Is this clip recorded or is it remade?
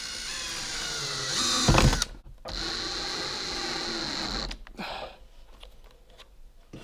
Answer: recorded